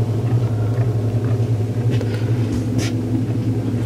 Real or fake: real